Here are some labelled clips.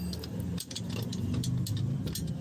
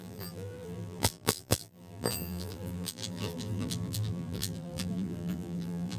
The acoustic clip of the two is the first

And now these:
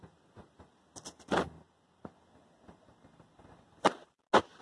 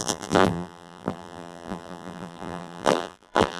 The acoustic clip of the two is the first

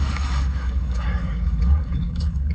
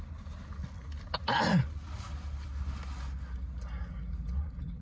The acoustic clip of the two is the second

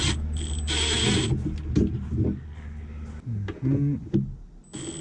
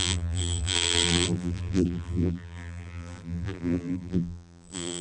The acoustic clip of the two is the first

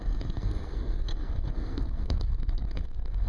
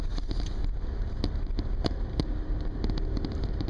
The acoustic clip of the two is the second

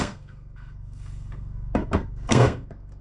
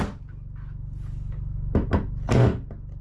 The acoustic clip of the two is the second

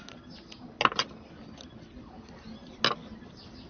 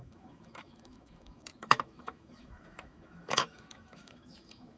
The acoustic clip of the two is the first